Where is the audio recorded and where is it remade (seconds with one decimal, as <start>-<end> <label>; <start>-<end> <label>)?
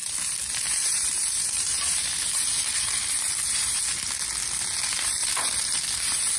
0.0-3.8 remade; 3.8-5.2 recorded; 5.2-6.4 remade